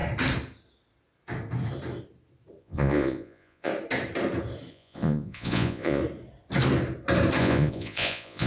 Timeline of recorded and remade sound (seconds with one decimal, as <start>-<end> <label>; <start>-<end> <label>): 0.0-2.6 recorded; 2.6-3.7 remade; 3.7-4.7 recorded; 4.7-6.0 remade; 6.0-7.4 recorded; 7.4-8.5 remade